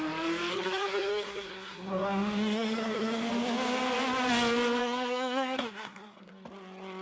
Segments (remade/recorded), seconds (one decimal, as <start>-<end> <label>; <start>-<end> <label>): 0.0-0.5 recorded; 0.5-3.3 remade; 3.3-4.8 recorded; 4.8-6.3 remade; 6.3-7.0 recorded

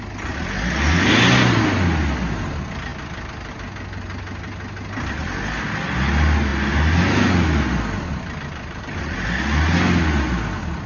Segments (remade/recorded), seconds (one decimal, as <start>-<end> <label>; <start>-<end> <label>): 0.0-10.9 recorded